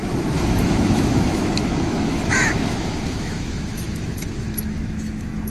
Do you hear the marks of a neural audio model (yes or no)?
yes